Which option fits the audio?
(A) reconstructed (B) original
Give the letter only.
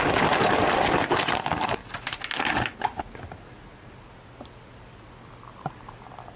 B